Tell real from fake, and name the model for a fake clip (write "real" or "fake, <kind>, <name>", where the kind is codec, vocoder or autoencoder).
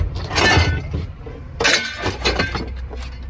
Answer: real